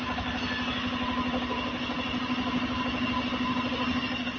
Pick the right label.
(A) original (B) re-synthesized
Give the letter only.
A